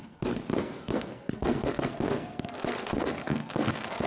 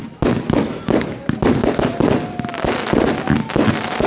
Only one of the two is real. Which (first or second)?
second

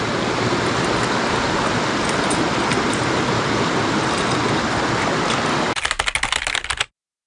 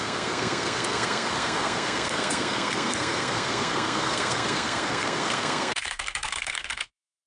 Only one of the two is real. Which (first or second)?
first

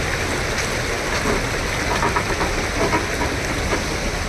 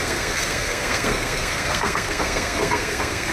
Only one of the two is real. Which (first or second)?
first